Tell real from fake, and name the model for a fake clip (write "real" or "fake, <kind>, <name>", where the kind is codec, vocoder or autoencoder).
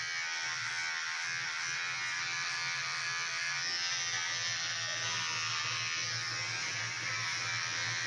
real